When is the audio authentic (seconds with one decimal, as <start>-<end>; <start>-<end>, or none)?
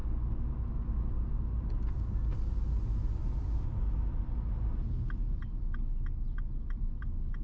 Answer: 0.0-7.4